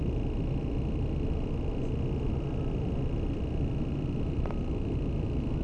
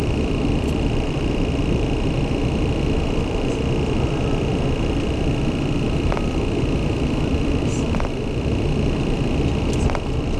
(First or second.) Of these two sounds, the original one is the first